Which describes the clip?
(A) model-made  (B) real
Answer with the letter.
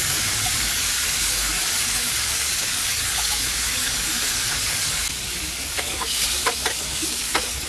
A